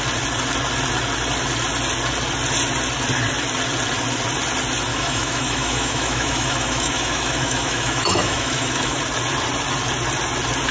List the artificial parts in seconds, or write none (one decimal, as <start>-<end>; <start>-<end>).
4.9-9.0